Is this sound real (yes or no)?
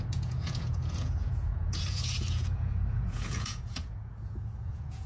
no